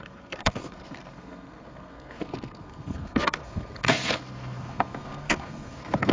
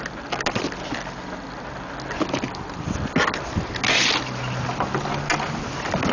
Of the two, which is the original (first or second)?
second